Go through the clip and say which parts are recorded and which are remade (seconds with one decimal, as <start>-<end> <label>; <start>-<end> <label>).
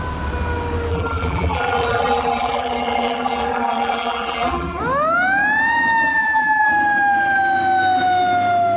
0.0-0.9 recorded; 0.9-4.8 remade; 4.8-6.1 recorded; 6.1-6.7 remade; 6.7-8.8 recorded